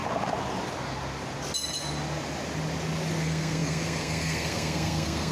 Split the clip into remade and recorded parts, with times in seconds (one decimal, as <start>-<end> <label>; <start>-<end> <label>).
0.0-3.2 recorded; 3.2-5.3 remade

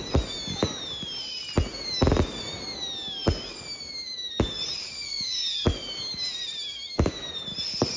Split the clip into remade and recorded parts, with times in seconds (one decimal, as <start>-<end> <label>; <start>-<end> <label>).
0.0-8.0 recorded

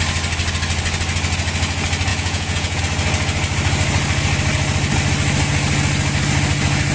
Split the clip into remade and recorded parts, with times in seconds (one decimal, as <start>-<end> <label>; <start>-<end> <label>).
0.0-2.1 recorded; 2.1-2.8 remade; 2.8-6.9 recorded

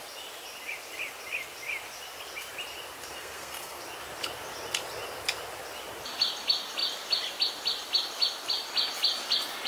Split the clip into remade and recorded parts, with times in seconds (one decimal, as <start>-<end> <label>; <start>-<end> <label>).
0.0-3.1 recorded; 3.1-3.8 remade; 3.8-9.7 recorded